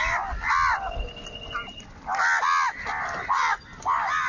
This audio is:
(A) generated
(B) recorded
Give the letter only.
B